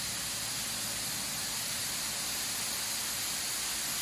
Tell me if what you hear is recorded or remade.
recorded